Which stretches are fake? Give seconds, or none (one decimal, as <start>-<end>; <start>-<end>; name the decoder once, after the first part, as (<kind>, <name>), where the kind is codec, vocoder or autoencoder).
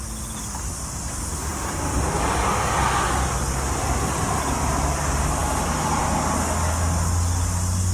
5.4-6.0 (vocoder, BigVGAN v2)